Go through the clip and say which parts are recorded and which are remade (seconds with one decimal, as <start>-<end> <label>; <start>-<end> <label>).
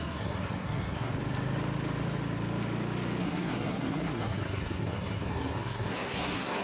0.0-1.1 remade; 1.1-3.2 recorded; 3.2-6.6 remade